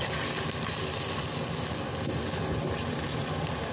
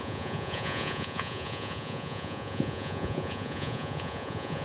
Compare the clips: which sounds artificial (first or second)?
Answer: second